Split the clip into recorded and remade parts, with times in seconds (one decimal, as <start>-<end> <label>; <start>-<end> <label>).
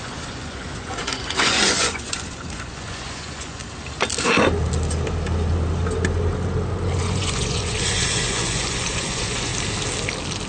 0.0-3.6 remade; 3.6-7.0 recorded; 7.0-9.5 remade; 9.5-10.5 recorded